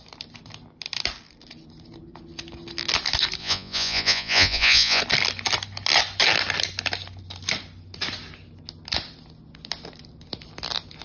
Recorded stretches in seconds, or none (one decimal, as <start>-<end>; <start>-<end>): 0.0-3.4; 5.0-11.0